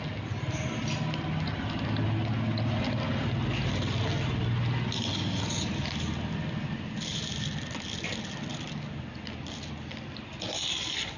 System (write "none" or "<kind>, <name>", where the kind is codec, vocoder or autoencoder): none